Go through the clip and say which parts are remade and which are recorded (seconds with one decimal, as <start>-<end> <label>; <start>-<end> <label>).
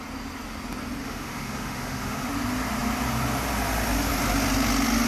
0.0-1.0 recorded; 1.0-2.3 remade; 2.3-5.1 recorded